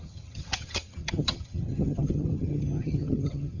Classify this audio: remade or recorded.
remade